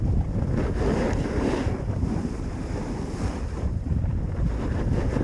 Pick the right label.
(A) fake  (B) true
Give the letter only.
B